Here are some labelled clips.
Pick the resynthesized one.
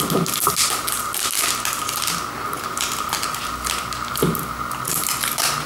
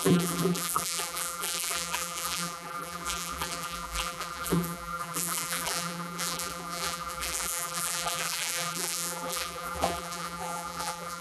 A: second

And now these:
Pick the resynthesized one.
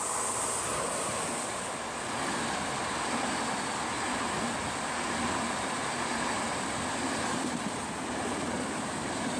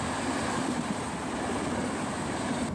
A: second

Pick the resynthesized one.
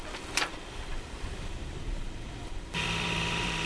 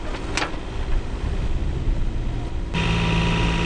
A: first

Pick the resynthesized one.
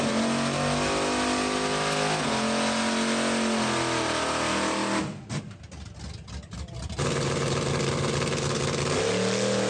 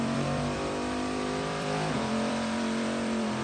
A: second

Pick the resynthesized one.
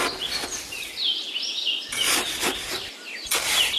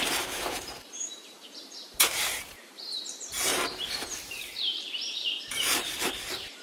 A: second